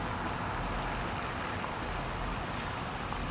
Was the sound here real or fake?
real